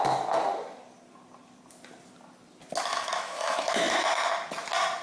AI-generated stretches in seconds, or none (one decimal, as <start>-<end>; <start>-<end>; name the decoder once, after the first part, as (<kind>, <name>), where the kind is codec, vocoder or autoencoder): 2.9-4.3 (autoencoder, DAC-VAE)